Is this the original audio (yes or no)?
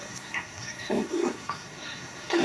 no